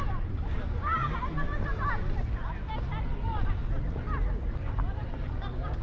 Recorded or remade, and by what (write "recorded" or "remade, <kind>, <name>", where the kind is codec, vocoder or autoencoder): recorded